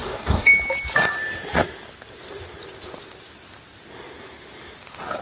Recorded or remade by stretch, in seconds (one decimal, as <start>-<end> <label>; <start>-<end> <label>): 0.0-0.5 remade; 0.5-5.2 recorded